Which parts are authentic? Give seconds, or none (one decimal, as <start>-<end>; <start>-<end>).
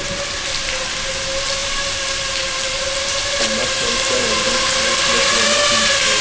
0.0-6.2